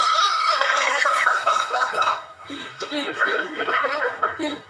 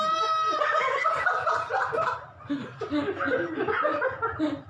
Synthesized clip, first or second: first